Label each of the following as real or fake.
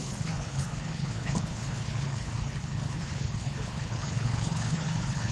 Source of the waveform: fake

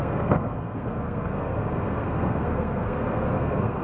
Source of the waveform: fake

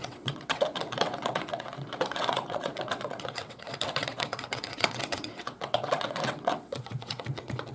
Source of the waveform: fake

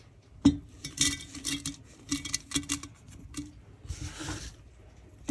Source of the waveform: real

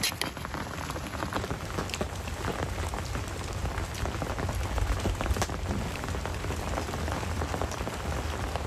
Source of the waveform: real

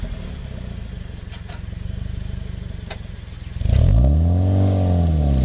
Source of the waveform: real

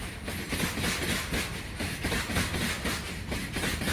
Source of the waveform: real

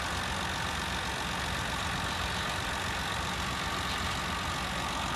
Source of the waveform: real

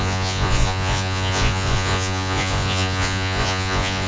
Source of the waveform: fake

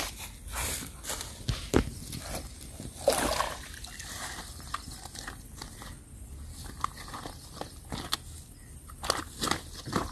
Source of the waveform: real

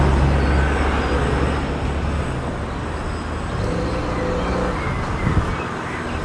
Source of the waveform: real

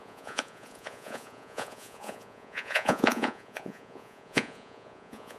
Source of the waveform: fake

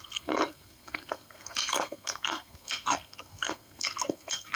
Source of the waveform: fake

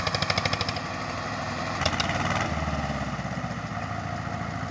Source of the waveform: real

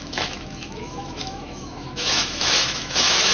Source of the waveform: fake